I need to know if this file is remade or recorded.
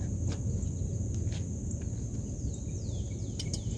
recorded